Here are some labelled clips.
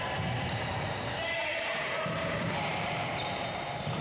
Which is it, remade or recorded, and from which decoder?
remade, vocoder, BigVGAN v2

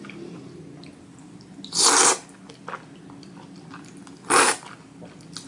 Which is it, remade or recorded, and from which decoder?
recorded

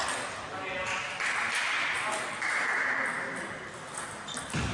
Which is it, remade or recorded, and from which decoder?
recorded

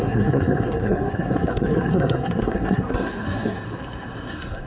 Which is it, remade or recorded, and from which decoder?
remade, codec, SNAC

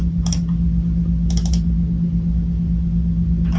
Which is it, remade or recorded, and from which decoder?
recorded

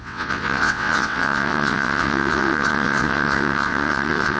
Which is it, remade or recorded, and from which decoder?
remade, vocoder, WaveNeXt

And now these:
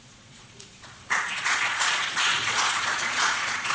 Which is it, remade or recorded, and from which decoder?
remade, vocoder, Vocos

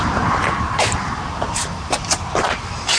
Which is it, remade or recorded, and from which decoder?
remade, vocoder, BigVGAN v2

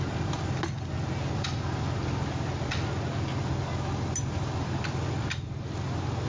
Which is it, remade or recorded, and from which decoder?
recorded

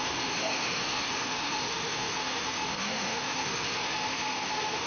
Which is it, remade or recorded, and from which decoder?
remade, autoencoder, DAC-VAE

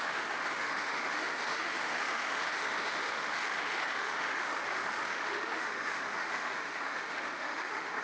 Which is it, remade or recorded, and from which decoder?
remade, autoencoder, DAC-VAE